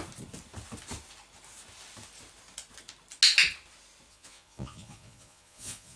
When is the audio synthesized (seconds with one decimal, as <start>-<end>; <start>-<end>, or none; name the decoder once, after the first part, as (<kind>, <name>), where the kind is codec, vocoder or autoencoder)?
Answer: 4.1-6.0 (vocoder, Vocos)